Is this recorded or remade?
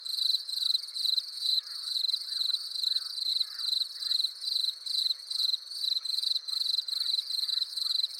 remade